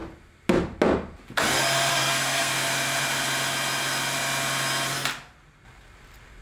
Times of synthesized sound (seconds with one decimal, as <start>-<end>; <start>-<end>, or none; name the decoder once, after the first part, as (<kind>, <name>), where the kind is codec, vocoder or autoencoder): 1.9-2.5 (codec, SNAC)